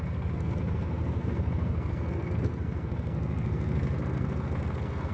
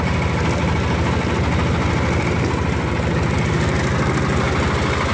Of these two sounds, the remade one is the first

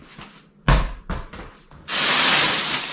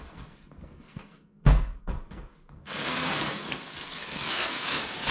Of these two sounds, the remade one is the second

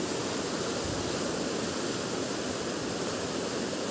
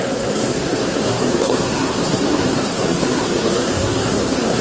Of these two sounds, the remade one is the second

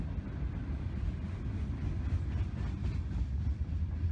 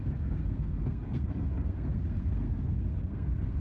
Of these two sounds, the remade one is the second